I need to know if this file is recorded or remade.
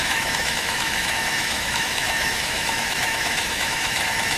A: remade